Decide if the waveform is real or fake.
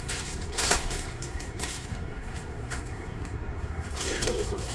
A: fake